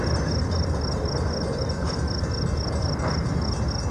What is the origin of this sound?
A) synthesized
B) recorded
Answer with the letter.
B